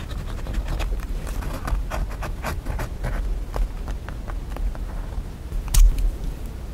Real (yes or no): yes